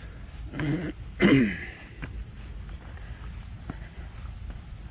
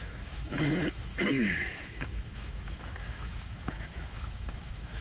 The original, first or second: first